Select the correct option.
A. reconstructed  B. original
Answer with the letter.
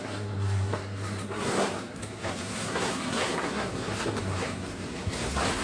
A